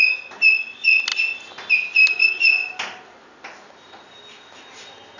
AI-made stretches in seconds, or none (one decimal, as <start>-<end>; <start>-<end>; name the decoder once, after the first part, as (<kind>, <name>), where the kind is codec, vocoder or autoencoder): none